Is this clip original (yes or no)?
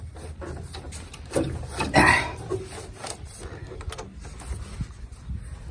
yes